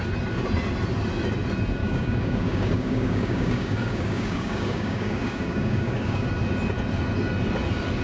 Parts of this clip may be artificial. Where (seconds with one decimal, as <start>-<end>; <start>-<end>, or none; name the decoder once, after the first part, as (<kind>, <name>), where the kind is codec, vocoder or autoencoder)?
1.8-6.3 (codec, DAC)